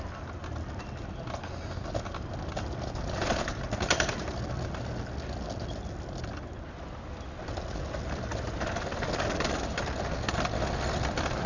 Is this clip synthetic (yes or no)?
no